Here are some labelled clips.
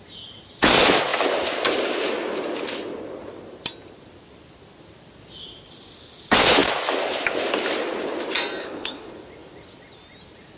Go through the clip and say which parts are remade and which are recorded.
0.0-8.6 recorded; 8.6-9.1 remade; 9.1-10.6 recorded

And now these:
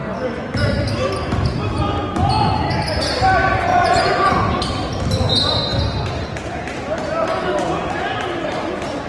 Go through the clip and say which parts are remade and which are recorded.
0.0-3.7 recorded; 3.7-4.3 remade; 4.3-9.1 recorded

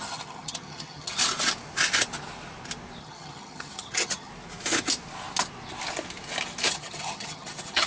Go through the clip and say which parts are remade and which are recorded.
0.0-1.2 remade; 1.2-3.0 recorded; 3.0-4.3 remade; 4.3-6.7 recorded; 6.7-7.9 remade

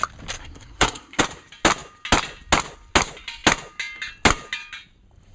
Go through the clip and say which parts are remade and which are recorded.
0.0-0.4 recorded; 0.4-1.2 remade; 1.2-5.3 recorded

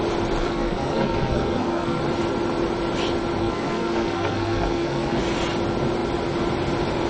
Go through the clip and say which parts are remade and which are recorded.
0.0-0.4 recorded; 0.4-2.0 remade; 2.0-3.4 recorded; 3.4-5.2 remade; 5.2-7.1 recorded

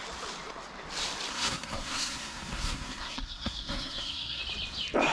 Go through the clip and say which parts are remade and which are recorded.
0.0-1.3 recorded; 1.3-4.4 remade; 4.4-5.1 recorded

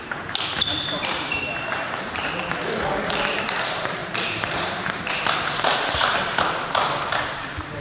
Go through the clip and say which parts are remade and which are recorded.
0.0-2.4 remade; 2.4-3.6 recorded; 3.6-7.8 remade

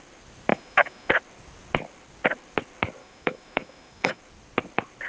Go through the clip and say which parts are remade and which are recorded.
0.0-0.5 recorded; 0.5-1.1 remade; 1.1-3.0 recorded; 3.0-4.2 remade; 4.2-5.1 recorded